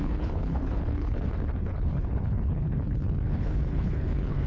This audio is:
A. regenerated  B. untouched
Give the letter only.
A